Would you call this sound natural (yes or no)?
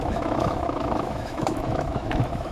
no